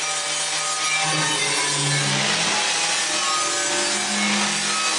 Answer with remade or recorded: recorded